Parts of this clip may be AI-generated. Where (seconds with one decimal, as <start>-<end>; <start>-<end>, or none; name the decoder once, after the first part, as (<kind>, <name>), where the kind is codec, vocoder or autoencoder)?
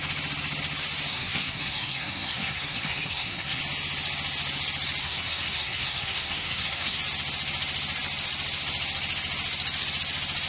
1.1-3.6 (codec, SNAC); 5.0-7.0